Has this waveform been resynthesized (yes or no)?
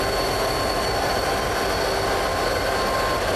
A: no